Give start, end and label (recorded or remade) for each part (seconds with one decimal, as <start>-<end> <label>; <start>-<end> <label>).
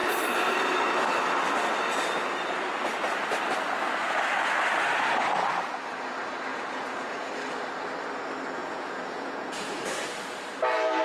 0.0-6.5 recorded; 6.5-7.3 remade; 7.3-8.6 recorded; 8.6-9.8 remade; 9.8-11.0 recorded